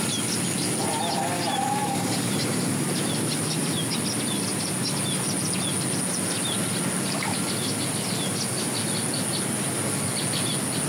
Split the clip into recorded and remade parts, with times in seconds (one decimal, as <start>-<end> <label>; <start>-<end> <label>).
0.0-1.8 recorded; 1.8-2.3 remade; 2.3-10.9 recorded